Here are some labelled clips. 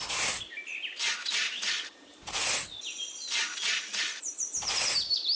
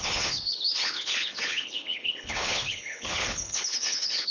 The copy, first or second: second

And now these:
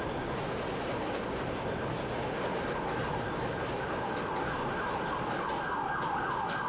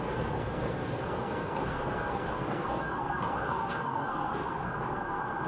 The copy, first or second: second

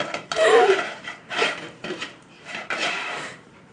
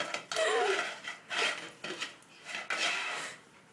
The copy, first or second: first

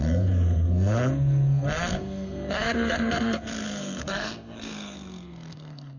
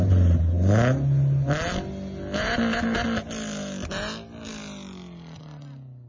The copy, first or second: first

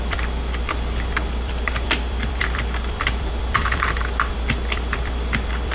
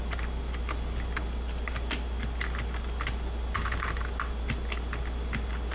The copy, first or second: first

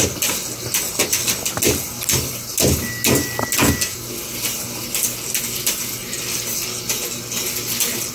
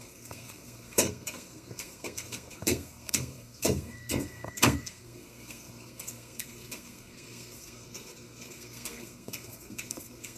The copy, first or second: second